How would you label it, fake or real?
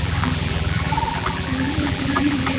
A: fake